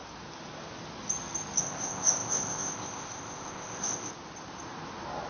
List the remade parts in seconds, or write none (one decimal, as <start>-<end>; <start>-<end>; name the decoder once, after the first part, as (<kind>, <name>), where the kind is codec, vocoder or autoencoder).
1.6-4.1 (codec, ZipCodec)